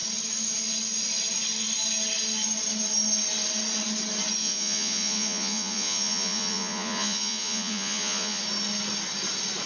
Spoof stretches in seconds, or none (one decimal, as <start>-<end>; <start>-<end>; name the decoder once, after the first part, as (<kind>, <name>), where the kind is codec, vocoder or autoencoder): 4.4-8.4 (vocoder, Vocos)